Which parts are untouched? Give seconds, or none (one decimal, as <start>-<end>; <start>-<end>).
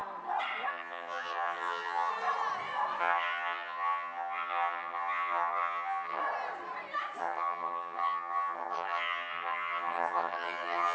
0.0-0.7; 2.1-3.0; 6.2-7.2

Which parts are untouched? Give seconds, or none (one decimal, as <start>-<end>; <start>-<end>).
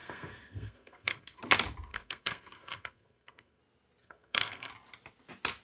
1.4-1.9; 3.6-4.0; 4.7-5.6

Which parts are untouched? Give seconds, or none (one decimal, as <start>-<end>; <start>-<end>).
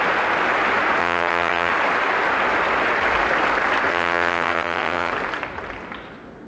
0.0-1.0; 1.7-3.9; 5.1-6.5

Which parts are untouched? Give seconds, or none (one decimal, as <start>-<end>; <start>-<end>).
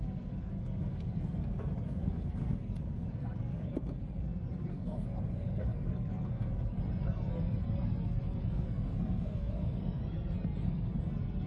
none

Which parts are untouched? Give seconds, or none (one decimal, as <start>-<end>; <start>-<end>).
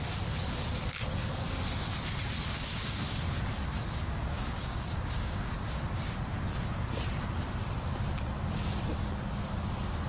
0.0-4.0; 5.5-10.1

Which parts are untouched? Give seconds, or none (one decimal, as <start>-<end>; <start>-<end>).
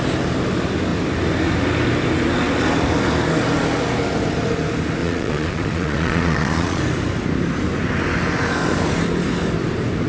0.0-5.0; 6.8-10.1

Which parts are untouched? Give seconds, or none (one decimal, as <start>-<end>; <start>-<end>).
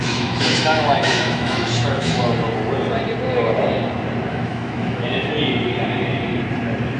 2.2-4.3; 5.3-7.0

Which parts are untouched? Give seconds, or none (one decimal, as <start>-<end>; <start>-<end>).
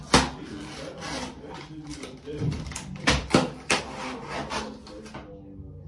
0.0-1.9; 3.8-5.9